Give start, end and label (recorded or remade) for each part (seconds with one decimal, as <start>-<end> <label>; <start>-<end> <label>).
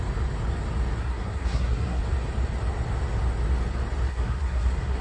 0.0-1.0 recorded; 1.0-2.0 remade; 2.0-4.1 recorded; 4.1-5.0 remade